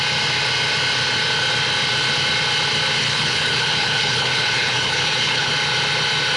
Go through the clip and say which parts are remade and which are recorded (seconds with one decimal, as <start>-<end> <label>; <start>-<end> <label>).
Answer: 0.0-3.0 recorded; 3.0-5.5 remade; 5.5-6.4 recorded